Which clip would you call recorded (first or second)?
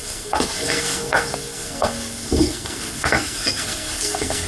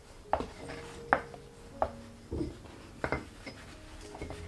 second